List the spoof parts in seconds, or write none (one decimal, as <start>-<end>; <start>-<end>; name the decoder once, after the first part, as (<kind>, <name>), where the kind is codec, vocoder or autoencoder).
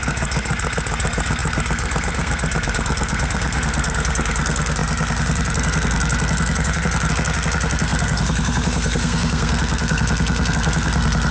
0.0-11.3 (codec, SNAC)